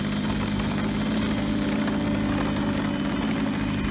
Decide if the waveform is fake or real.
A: real